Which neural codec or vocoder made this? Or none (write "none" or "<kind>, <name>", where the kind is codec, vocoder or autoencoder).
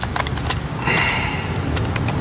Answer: none